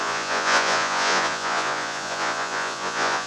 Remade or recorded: remade